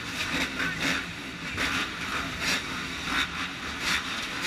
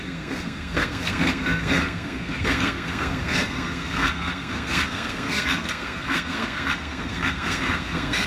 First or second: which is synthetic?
second